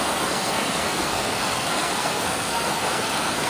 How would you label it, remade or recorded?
remade